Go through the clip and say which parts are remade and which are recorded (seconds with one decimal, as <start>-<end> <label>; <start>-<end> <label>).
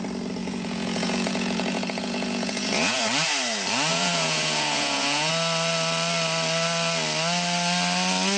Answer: 0.0-0.4 recorded; 0.4-3.0 remade; 3.0-3.9 recorded; 3.9-5.3 remade; 5.3-8.4 recorded